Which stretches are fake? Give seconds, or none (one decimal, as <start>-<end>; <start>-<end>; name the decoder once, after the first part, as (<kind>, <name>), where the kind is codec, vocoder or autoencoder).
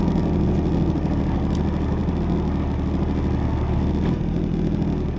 none